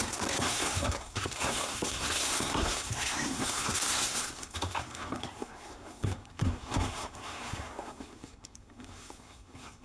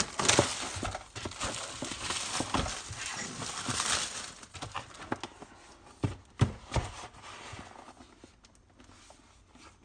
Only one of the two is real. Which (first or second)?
second